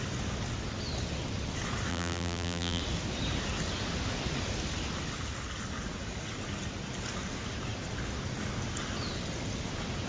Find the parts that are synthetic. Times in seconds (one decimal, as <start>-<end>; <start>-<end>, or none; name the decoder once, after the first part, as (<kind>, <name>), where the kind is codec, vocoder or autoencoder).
1.9-2.8 (vocoder, BigVGAN v2)